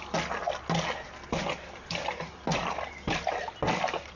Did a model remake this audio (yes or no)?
no